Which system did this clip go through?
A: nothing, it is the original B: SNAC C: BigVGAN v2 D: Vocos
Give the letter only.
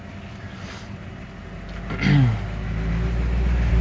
A